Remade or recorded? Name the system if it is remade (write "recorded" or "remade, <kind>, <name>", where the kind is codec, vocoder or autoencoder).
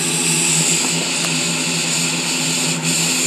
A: recorded